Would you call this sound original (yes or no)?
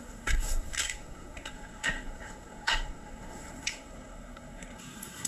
no